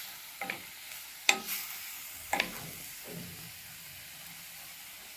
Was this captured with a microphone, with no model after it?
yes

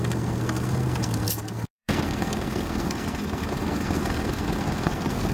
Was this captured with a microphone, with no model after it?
no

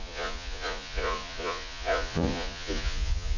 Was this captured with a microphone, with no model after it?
no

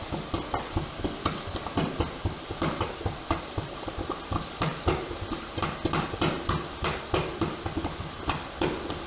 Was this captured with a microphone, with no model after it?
yes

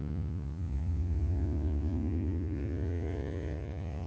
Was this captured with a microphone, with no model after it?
no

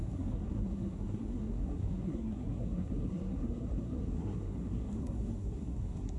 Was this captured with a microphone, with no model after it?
no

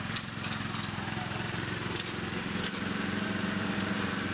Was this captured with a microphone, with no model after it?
no